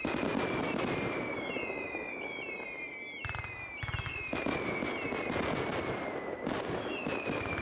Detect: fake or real real